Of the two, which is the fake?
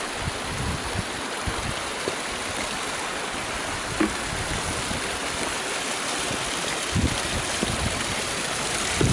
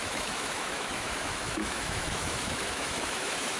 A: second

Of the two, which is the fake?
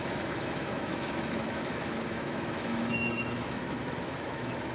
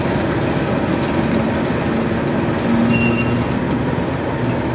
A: first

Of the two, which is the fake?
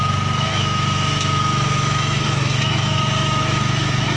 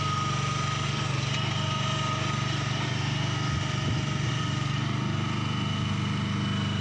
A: first